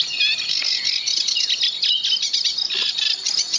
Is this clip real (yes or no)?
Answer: yes